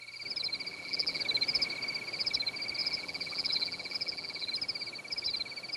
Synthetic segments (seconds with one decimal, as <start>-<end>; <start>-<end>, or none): 0.7-1.2; 2.8-4.5